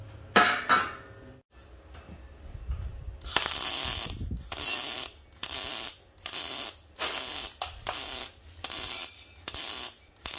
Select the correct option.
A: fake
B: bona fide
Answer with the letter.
B